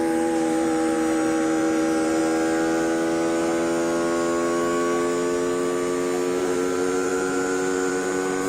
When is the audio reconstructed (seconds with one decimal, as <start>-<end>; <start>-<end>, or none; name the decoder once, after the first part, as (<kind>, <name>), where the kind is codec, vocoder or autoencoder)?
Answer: 0.0-2.2 (vocoder, BigVGAN v2); 6.4-8.5